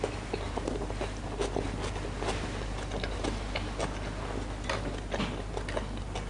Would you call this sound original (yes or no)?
yes